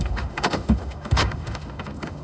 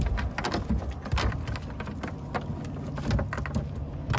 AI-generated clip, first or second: first